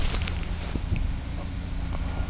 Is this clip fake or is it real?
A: fake